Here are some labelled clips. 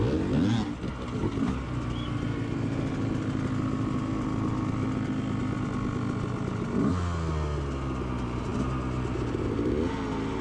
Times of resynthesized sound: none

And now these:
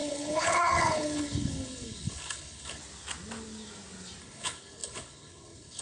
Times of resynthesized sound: 0.0-2.8 (codec, HILCodec); 4.2-5.8

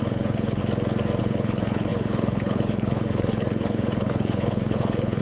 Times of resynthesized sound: 0.0-0.6 (codec, HILCodec); 1.2-5.2

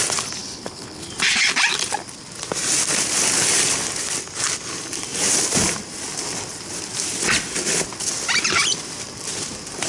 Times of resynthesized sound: 0.4-1.1 (codec, HILCodec)

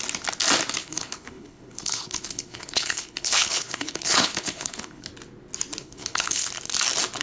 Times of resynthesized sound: 0.8-5.1 (codec, HILCodec); 5.8-6.5